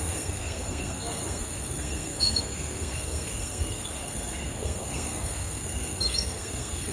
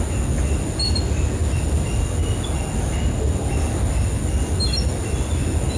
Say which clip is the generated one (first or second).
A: first